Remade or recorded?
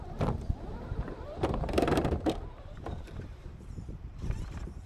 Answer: remade